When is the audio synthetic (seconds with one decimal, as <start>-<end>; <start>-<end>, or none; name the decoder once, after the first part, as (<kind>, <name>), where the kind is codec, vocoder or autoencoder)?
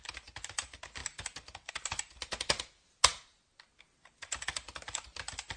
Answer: none